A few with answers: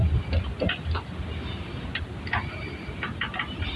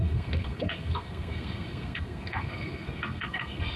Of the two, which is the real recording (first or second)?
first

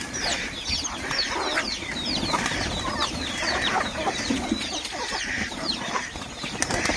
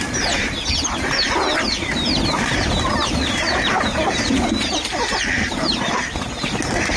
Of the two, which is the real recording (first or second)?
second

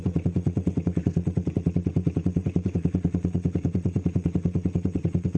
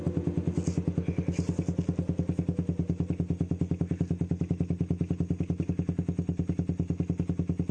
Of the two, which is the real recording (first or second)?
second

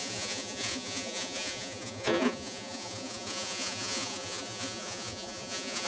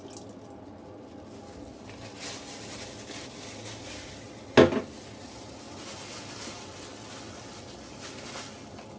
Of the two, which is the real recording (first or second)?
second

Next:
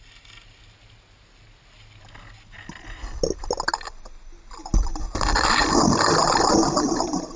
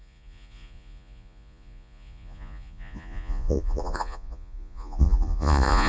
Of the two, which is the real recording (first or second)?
first